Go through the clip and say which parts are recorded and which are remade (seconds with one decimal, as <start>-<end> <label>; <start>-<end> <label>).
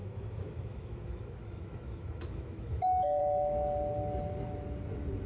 0.0-3.2 remade; 3.2-5.3 recorded